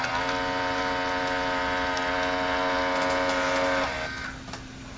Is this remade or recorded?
recorded